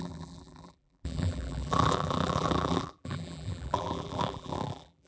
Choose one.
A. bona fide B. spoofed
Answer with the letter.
B